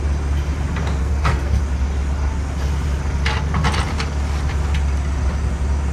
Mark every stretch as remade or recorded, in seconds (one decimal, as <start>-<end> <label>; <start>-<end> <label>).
0.0-1.0 recorded; 1.0-1.6 remade; 1.6-5.9 recorded